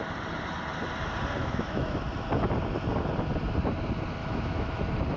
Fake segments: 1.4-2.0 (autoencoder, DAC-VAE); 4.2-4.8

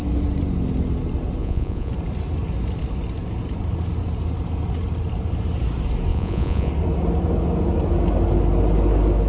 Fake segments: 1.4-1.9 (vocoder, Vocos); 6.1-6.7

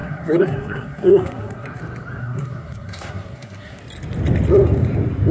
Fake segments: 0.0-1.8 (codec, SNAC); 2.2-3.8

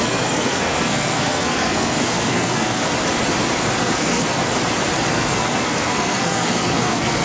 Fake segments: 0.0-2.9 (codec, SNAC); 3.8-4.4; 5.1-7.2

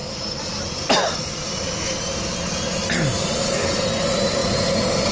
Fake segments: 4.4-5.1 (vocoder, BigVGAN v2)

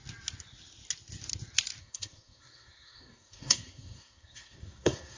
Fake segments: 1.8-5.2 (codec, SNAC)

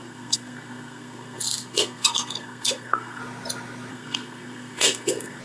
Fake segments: 0.0-3.2 (codec, SNAC); 3.9-5.4